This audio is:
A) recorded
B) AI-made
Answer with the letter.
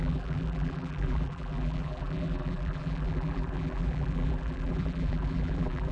B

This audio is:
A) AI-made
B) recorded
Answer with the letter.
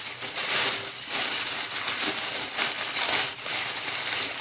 A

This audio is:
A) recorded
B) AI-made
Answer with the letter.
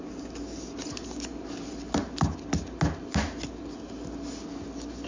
A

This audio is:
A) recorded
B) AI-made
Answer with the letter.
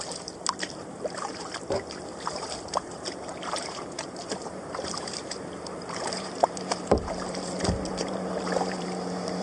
B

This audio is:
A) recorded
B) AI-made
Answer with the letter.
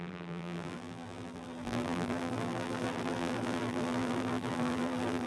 B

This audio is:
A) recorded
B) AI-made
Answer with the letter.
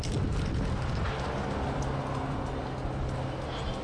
A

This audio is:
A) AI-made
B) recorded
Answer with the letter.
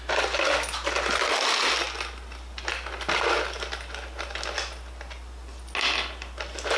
B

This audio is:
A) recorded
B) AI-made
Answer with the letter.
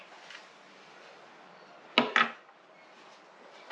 A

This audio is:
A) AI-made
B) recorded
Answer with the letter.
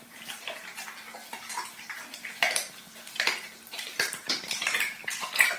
A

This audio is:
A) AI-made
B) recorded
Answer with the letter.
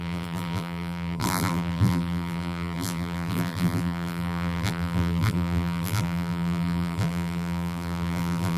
A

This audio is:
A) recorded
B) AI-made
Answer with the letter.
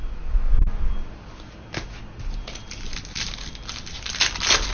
A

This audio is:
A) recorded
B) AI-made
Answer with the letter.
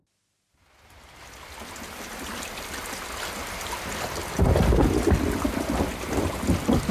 A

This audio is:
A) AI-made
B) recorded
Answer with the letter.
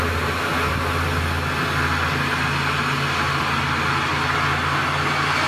B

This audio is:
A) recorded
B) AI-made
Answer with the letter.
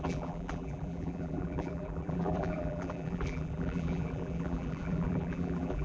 B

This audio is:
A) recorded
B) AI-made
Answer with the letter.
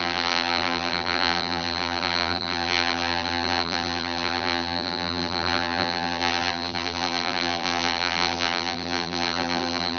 B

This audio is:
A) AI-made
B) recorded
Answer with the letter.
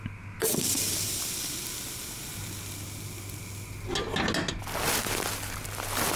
B